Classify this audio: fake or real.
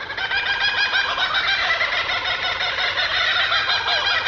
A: real